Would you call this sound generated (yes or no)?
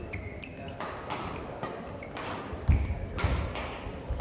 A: no